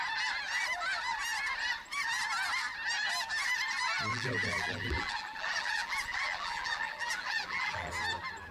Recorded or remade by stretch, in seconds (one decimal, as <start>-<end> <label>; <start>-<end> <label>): 0.0-4.1 recorded; 4.1-7.9 remade; 7.9-8.5 recorded